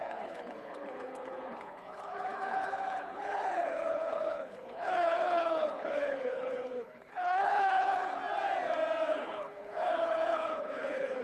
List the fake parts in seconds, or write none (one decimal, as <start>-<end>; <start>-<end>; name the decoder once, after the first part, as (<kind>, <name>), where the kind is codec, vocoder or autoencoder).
0.0-8.2 (codec, HILCodec); 9.1-11.2